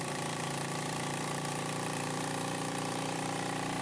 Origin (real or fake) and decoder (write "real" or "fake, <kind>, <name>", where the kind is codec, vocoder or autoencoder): fake, vocoder, BigVGAN v2